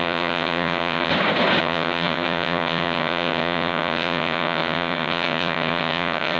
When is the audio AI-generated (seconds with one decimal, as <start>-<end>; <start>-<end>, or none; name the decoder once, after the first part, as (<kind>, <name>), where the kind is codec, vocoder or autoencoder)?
0.0-1.1 (vocoder, HiFi-GAN); 1.6-6.4